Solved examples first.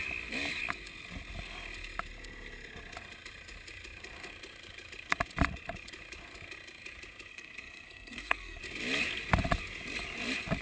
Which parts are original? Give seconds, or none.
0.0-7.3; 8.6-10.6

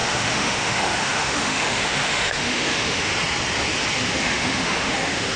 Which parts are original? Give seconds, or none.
3.1-4.1

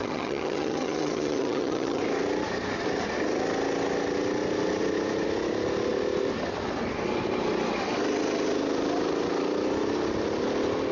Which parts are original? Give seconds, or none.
2.0-10.9

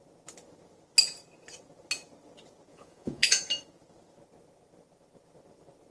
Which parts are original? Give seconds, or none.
0.0-2.7; 3.4-5.9

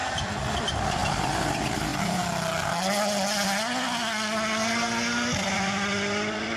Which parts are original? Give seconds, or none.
0.0-0.6; 1.9-5.5

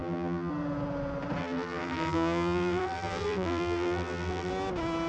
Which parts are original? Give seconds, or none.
0.5-1.4; 4.5-5.1

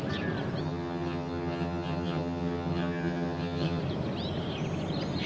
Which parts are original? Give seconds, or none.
0.0-0.6; 3.8-5.3

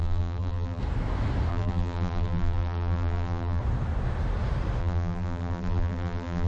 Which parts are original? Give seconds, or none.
0.8-1.5; 3.6-4.8